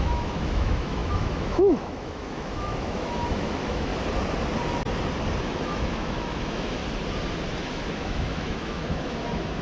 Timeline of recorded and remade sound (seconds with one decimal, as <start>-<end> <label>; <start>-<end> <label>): 0.0-3.9 remade; 3.9-5.4 recorded; 5.4-6.8 remade; 6.8-7.7 recorded; 7.7-9.6 remade